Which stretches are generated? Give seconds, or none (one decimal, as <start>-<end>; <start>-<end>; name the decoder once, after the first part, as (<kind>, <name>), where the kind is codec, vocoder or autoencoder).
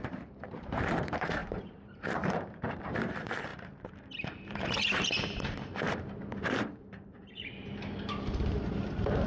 0.0-9.3 (vocoder, BigVGAN v2)